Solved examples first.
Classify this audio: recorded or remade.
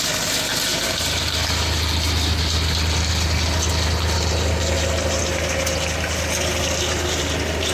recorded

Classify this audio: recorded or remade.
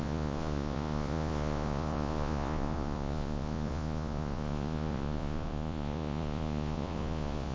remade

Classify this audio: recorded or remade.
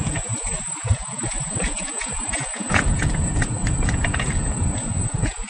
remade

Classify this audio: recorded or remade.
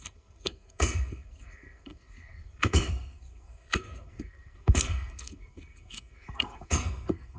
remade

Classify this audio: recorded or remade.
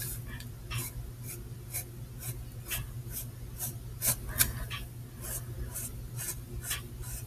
recorded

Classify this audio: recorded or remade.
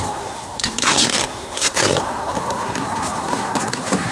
remade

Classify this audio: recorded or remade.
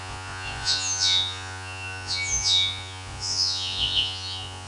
remade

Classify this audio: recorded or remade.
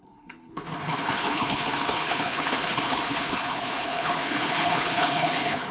remade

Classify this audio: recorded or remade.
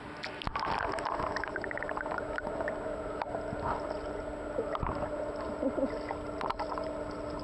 recorded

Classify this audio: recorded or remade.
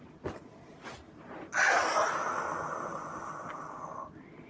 recorded